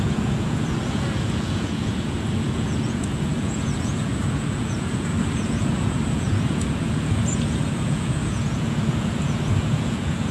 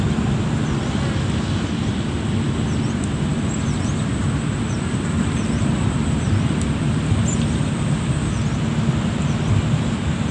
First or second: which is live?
second